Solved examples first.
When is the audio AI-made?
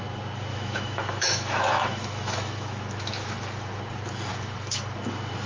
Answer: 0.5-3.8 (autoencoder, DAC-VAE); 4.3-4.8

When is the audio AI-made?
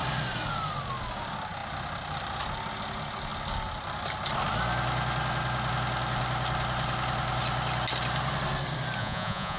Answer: 9.0-9.6 (vocoder, Vocos)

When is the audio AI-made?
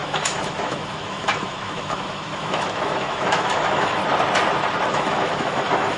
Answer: 0.0-4.0 (autoencoder, DAC-VAE); 4.9-6.0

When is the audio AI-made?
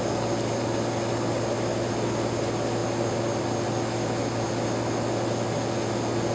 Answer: none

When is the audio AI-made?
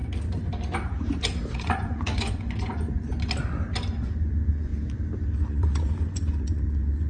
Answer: 1.5-3.1 (vocoder, Vocos); 4.0-4.7; 5.4-7.1